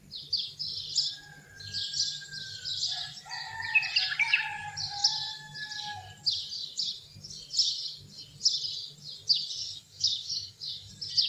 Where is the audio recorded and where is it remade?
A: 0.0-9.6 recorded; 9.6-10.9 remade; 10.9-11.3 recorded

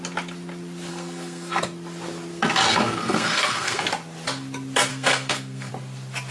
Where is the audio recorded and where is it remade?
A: 0.0-0.9 recorded; 0.9-1.6 remade; 1.6-2.3 recorded; 2.3-3.8 remade; 3.8-4.9 recorded; 4.9-5.7 remade; 5.7-6.3 recorded

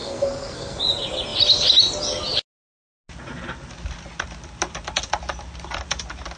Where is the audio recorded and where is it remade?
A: 0.0-0.8 remade; 0.8-6.4 recorded

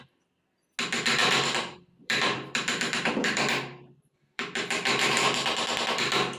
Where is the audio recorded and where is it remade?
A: 0.0-1.2 recorded; 1.2-5.0 remade; 5.0-6.4 recorded

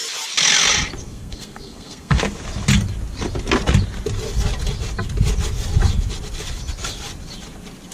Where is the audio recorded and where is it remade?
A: 0.0-1.0 recorded; 1.0-2.2 remade; 2.2-7.9 recorded